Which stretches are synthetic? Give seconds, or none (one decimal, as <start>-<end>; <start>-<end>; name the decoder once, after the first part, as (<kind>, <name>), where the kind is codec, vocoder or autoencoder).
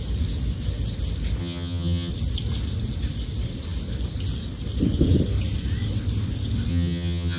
1.4-2.1 (vocoder, HiFi-GAN); 6.7-7.4